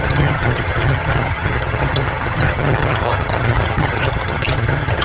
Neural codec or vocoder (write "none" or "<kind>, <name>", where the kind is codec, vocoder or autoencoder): vocoder, HiFi-GAN